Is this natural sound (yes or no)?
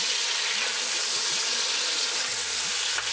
yes